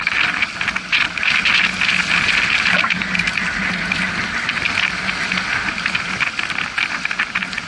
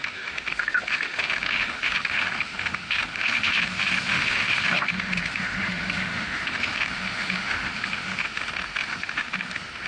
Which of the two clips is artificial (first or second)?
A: second